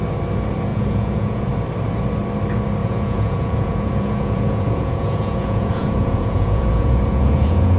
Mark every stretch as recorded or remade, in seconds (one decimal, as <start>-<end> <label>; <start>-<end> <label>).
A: 0.0-0.7 recorded; 0.7-1.5 remade; 1.5-2.8 recorded; 2.8-7.8 remade